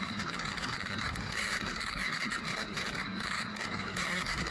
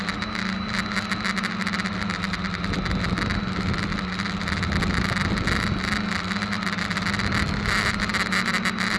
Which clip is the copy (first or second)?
first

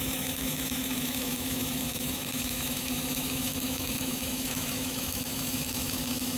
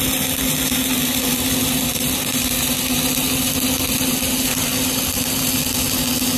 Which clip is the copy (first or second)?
first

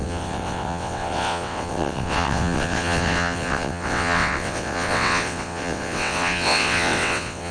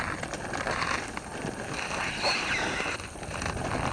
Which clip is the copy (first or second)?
first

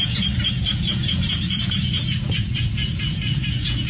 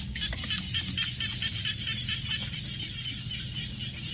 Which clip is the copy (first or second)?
first